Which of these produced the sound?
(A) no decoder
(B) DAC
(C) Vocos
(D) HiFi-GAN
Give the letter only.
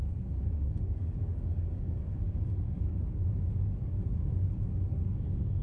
B